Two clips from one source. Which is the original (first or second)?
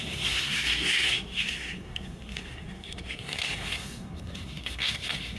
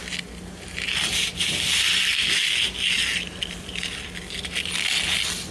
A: second